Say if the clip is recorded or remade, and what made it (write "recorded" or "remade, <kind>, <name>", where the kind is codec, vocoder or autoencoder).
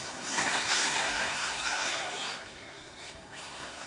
remade, codec, SNAC